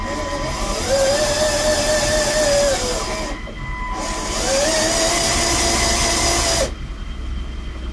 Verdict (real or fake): real